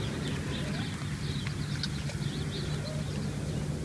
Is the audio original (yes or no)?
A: yes